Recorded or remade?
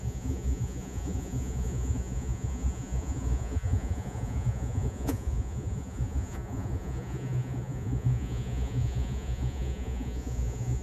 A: remade